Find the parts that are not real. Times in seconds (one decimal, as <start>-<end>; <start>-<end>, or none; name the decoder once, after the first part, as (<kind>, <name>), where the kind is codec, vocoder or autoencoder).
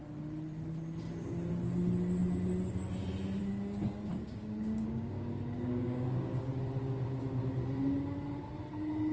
4.1-6.6 (codec, DAC)